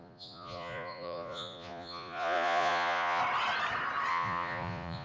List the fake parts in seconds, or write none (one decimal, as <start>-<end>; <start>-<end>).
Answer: 0.0-3.2; 4.1-5.0